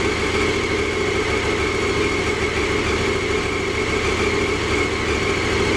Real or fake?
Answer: real